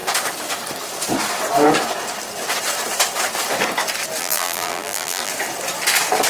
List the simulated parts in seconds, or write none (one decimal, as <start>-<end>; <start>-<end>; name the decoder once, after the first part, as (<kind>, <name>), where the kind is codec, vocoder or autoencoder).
4.2-5.3 (vocoder, BigVGAN v2)